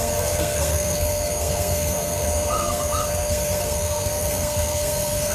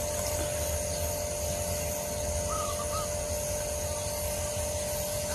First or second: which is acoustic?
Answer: second